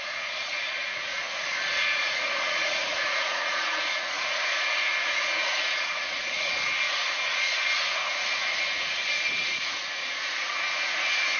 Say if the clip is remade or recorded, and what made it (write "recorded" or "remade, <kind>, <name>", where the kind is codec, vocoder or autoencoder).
remade, vocoder, Vocos